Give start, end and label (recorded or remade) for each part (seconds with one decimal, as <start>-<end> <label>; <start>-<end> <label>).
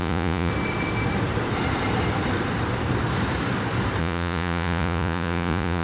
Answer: 0.0-0.5 remade; 0.5-4.0 recorded; 4.0-5.8 remade